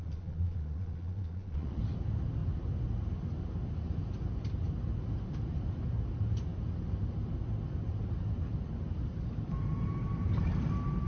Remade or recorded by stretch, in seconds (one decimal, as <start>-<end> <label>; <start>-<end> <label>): 0.0-1.8 remade; 1.8-11.1 recorded